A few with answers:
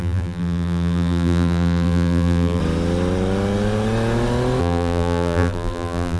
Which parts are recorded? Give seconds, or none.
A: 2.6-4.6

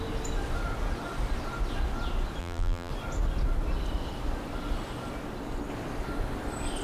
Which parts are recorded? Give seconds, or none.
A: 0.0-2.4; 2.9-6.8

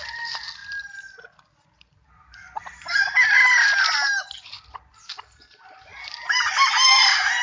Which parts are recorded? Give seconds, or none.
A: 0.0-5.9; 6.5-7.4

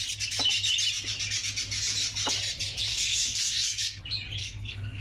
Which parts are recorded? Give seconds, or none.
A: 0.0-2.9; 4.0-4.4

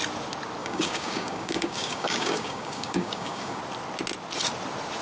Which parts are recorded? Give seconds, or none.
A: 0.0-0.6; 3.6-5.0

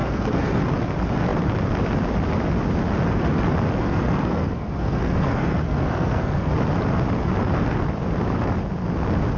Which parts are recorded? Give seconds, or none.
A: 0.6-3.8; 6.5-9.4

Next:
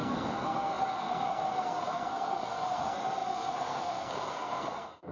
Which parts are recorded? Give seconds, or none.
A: none